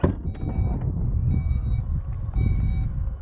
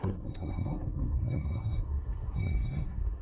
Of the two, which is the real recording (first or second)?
first